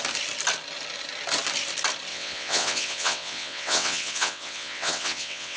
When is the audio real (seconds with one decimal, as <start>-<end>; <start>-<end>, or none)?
0.0-2.1